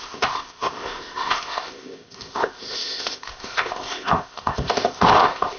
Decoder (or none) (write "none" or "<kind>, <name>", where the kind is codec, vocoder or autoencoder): codec, ZipCodec